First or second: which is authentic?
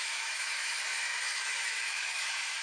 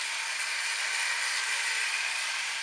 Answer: second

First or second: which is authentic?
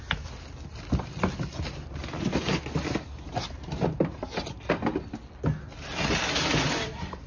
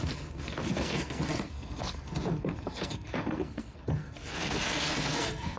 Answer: first